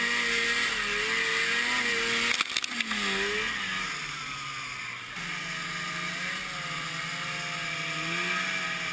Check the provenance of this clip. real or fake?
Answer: real